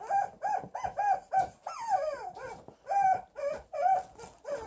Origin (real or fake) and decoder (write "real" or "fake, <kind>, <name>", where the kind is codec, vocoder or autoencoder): real